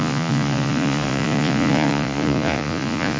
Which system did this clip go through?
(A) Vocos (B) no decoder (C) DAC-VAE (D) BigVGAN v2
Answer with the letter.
A